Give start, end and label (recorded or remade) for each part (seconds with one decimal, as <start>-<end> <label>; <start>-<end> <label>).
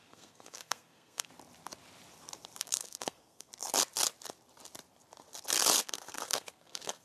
0.0-1.3 remade; 1.3-2.6 recorded; 2.6-3.5 remade; 3.5-5.8 recorded; 5.8-7.0 remade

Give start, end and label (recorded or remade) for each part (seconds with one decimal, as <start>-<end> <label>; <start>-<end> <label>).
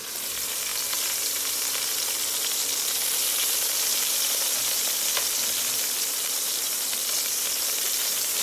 0.0-0.7 recorded; 0.7-1.5 remade; 1.5-3.2 recorded; 3.2-8.4 remade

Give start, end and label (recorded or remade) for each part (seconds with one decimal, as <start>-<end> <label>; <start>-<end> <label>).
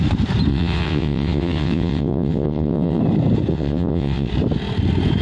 0.0-0.5 recorded; 0.5-3.0 remade; 3.0-3.5 recorded; 3.5-4.3 remade; 4.3-5.2 recorded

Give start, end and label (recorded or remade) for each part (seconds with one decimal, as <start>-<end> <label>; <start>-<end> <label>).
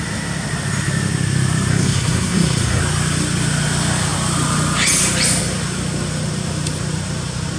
0.0-1.7 recorded; 1.7-2.8 remade; 2.8-7.6 recorded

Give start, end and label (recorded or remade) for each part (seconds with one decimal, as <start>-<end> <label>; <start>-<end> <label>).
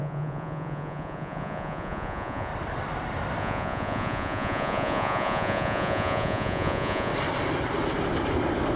0.0-2.5 remade; 2.5-3.4 recorded; 3.4-7.1 remade; 7.1-8.8 recorded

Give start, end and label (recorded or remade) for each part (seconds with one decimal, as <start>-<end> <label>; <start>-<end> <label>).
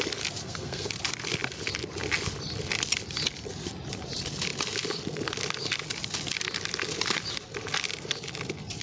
0.0-0.4 recorded; 0.4-0.9 remade; 0.9-8.8 recorded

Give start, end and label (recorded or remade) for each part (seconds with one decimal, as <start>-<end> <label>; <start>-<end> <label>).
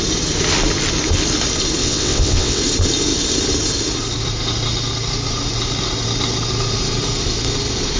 0.0-1.8 recorded; 1.8-2.6 remade; 2.6-8.0 recorded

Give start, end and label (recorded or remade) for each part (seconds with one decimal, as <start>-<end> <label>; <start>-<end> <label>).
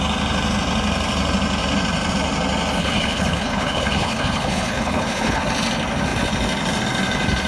0.0-2.8 recorded; 2.8-5.4 remade; 5.4-7.5 recorded